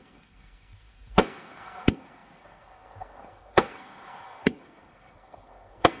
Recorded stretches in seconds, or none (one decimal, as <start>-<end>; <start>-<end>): none